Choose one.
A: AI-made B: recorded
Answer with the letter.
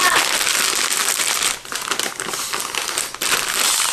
B